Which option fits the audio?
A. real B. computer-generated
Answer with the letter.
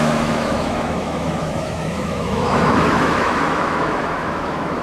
B